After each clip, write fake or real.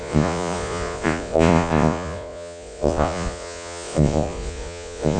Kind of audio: fake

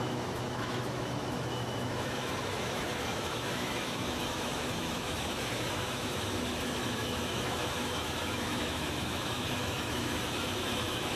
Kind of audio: fake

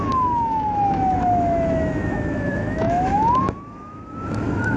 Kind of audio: fake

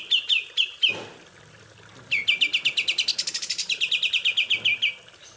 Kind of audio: real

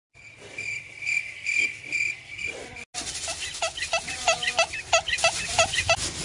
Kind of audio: real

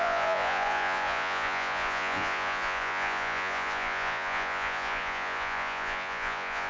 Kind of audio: fake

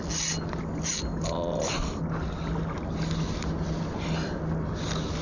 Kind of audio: real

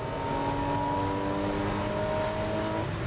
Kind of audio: real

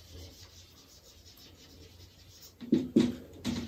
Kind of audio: fake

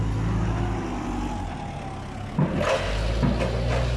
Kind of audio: real